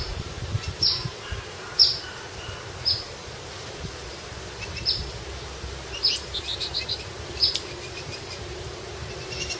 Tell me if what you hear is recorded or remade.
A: remade